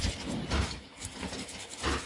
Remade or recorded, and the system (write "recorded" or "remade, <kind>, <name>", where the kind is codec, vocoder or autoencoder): recorded